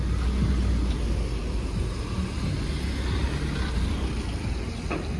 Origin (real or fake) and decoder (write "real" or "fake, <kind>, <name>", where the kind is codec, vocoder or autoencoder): real